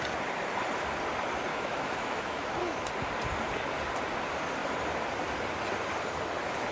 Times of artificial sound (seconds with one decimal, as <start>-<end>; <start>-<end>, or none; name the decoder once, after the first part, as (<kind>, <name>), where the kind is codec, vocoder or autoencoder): 1.5-2.9 (autoencoder, DAC-VAE)

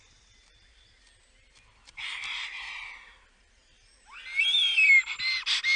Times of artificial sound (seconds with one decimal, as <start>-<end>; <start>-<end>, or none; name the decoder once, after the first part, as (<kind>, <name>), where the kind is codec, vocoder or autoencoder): none

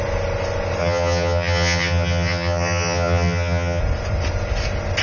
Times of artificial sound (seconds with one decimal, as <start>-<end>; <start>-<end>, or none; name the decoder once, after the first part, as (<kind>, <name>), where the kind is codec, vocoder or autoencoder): 0.8-3.8 (vocoder, HiFi-GAN)

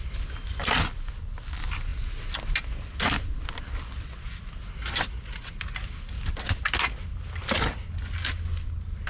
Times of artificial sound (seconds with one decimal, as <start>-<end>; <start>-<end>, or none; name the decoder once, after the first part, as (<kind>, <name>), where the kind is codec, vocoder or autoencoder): none

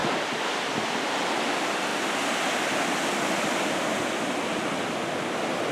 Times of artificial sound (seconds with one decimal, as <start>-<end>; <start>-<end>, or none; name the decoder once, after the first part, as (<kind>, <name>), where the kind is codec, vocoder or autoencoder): 0.0-1.3 (vocoder, BigVGAN v2); 1.9-4.3

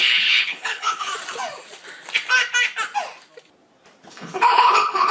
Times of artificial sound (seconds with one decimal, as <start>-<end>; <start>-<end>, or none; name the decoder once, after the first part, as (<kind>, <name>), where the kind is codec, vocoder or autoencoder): 0.0-1.1 (codec, HILCodec); 4.1-5.1